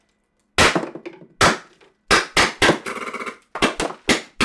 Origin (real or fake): real